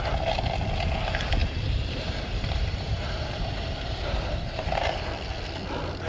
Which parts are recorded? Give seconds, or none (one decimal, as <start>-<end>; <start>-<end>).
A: 0.0-1.4; 5.1-6.1